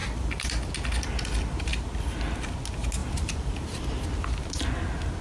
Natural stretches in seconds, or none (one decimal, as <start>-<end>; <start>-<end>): 0.7-3.0; 3.9-5.2